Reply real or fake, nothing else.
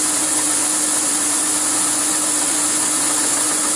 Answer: fake